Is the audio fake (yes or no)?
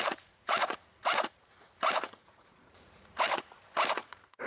yes